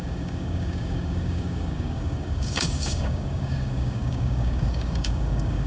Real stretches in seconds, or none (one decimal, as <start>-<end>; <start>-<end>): none